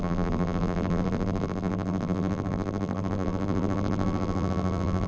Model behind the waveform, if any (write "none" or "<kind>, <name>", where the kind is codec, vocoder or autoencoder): vocoder, BigVGAN v2